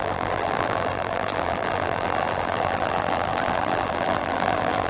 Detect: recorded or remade remade